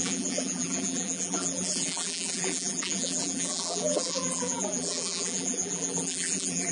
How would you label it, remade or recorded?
remade